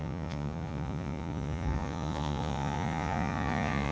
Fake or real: fake